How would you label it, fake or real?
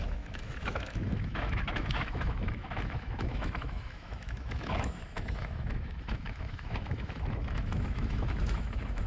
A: fake